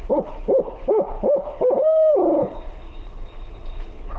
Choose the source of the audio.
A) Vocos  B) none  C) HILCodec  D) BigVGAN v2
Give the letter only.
C